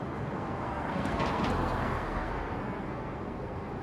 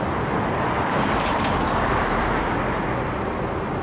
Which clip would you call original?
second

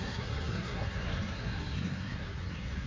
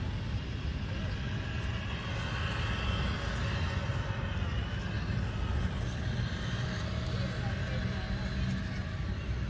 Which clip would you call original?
second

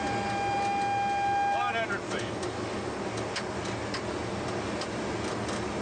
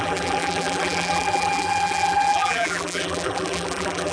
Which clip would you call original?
first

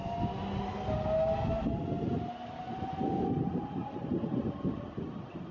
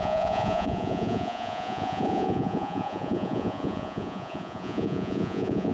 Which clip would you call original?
first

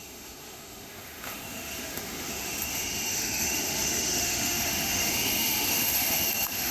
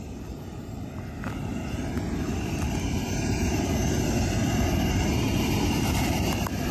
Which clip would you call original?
second